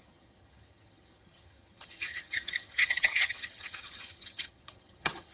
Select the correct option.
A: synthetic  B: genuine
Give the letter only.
A